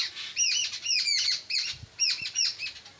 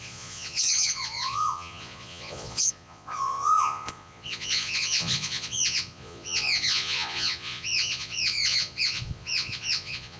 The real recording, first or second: first